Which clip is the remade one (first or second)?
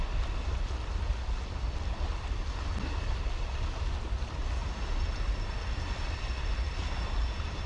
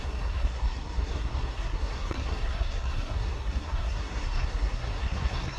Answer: second